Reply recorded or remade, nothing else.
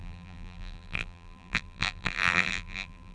remade